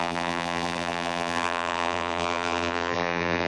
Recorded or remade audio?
remade